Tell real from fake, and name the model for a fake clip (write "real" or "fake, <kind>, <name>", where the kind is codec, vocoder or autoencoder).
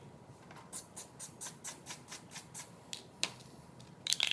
real